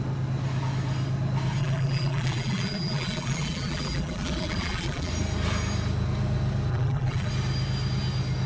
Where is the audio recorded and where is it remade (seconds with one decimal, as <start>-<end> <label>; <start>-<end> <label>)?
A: 0.0-1.6 recorded; 1.6-5.1 remade; 5.1-6.7 recorded; 6.7-7.3 remade; 7.3-8.5 recorded